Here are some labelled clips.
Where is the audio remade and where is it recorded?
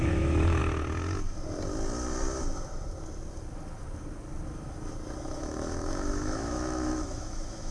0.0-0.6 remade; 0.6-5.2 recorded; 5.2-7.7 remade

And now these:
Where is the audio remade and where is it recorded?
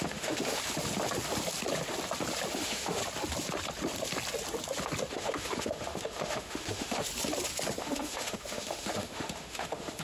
0.0-0.6 remade; 0.6-2.5 recorded; 2.5-3.0 remade; 3.0-5.1 recorded; 5.1-7.1 remade; 7.1-7.8 recorded; 7.8-10.0 remade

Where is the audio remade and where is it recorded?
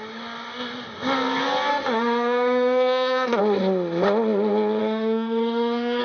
0.0-1.7 recorded; 1.7-3.4 remade; 3.4-4.8 recorded; 4.8-6.0 remade